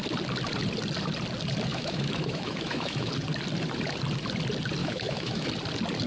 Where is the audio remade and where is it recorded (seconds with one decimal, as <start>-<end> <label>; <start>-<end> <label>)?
0.0-1.7 recorded; 1.7-3.1 remade; 3.1-4.8 recorded; 4.8-5.5 remade; 5.5-6.1 recorded